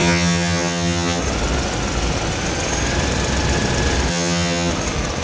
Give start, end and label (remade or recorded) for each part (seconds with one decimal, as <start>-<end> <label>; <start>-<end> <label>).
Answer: 0.0-1.2 remade; 1.2-4.1 recorded; 4.1-4.7 remade; 4.7-5.2 recorded